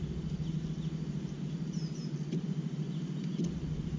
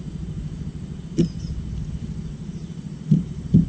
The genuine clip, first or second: first